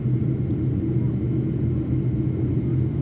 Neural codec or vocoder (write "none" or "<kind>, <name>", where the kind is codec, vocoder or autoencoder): none